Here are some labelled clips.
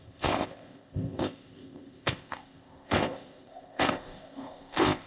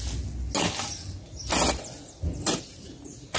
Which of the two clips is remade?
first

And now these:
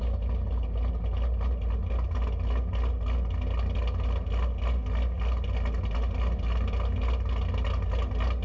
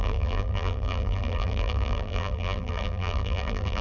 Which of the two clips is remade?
second